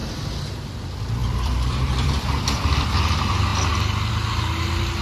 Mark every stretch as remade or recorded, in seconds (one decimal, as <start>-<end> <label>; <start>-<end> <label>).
0.0-1.2 recorded; 1.2-2.9 remade; 2.9-5.0 recorded